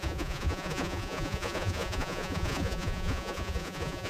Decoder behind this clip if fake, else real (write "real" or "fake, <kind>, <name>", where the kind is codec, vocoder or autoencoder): fake, vocoder, Vocos